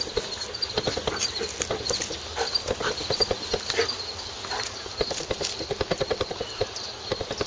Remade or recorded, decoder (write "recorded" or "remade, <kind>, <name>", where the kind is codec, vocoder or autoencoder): recorded